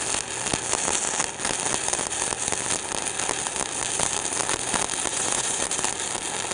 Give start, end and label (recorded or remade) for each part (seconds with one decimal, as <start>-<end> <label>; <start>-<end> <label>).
0.0-5.1 recorded; 5.1-5.6 remade; 5.6-6.5 recorded